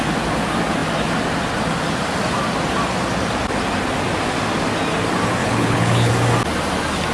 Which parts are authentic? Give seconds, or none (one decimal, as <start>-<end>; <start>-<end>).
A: 0.0-5.4; 6.1-7.1